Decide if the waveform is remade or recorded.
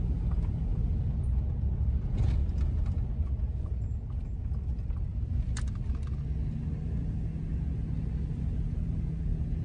recorded